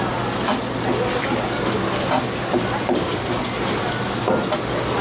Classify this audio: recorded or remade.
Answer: recorded